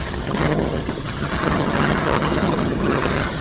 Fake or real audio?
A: fake